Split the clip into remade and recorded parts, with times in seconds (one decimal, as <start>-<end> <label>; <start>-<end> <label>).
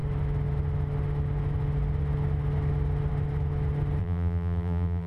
0.0-4.0 recorded; 4.0-5.1 remade